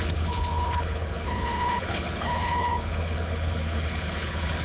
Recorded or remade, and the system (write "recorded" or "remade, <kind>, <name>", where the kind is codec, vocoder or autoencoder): remade, codec, HILCodec